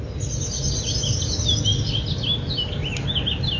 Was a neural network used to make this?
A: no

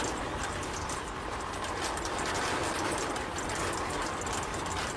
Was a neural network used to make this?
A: no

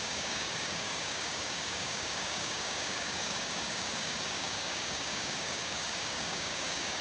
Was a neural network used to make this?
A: yes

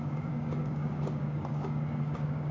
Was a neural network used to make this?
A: yes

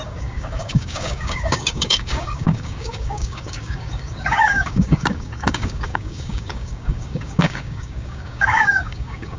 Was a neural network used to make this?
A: yes